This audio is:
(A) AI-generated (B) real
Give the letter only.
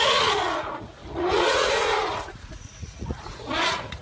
A